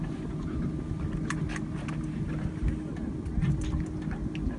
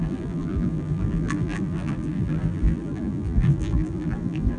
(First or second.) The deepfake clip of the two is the second